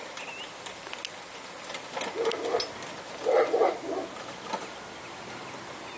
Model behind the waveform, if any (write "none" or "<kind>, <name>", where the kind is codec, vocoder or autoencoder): none